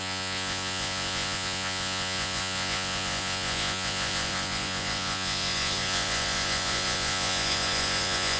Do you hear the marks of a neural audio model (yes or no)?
yes